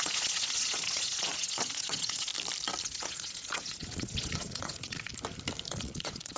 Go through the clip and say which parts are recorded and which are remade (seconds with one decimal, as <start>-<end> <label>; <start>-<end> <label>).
0.0-2.3 remade; 2.3-2.8 recorded; 2.8-5.1 remade; 5.1-5.7 recorded; 5.7-6.4 remade